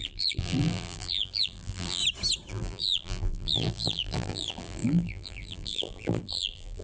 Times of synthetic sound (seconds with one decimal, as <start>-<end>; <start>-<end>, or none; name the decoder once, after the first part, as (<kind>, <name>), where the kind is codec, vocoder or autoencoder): 0.0-2.0 (vocoder, BigVGAN v2); 2.5-6.8